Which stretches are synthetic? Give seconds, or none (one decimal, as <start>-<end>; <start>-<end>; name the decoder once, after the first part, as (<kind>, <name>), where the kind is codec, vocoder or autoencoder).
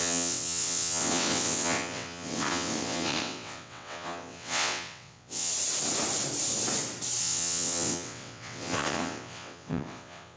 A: 0.0-5.5 (vocoder, WaveNeXt); 7.2-10.4